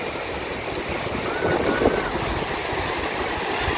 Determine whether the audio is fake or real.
real